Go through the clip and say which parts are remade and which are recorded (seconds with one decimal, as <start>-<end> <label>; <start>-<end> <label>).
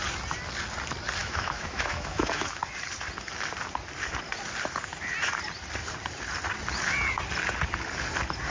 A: 0.0-1.2 recorded; 1.2-2.6 remade; 2.6-8.5 recorded